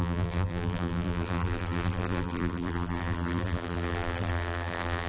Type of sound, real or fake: fake